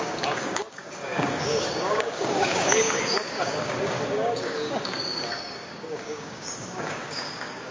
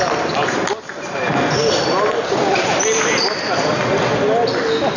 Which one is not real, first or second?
first